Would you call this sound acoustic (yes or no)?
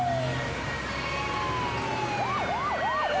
yes